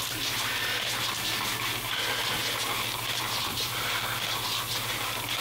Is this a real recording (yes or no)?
yes